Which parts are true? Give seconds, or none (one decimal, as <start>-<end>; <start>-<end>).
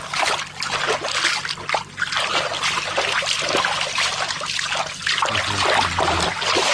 0.0-6.7